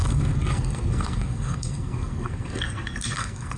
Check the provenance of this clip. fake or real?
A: fake